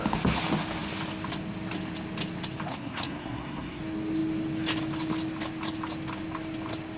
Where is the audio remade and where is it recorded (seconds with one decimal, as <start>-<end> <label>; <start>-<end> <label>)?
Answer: 0.0-2.7 recorded; 2.7-3.8 remade; 3.8-7.0 recorded